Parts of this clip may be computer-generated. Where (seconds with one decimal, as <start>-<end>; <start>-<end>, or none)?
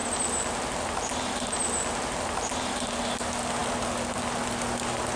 none